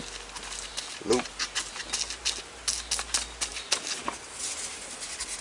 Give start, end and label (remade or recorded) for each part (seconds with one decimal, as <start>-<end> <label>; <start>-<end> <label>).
0.0-5.4 recorded